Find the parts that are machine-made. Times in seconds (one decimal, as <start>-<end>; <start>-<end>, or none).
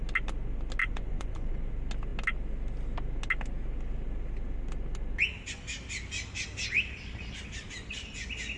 0.8-1.7